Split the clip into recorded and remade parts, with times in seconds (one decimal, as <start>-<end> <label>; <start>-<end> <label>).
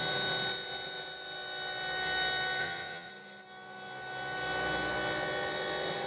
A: 0.0-2.6 recorded; 2.6-3.1 remade; 3.1-6.1 recorded